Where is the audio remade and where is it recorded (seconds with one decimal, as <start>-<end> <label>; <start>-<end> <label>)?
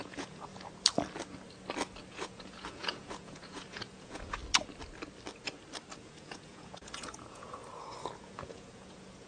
0.0-0.5 remade; 0.5-2.1 recorded; 2.1-4.4 remade; 4.4-6.0 recorded; 6.0-7.6 remade; 7.6-8.2 recorded; 8.2-9.3 remade